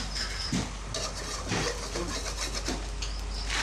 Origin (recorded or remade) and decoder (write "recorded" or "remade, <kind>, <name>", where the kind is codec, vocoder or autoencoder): recorded